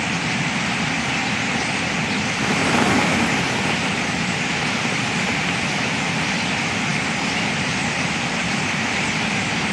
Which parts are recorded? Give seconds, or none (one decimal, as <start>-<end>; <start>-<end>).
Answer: 2.6-4.0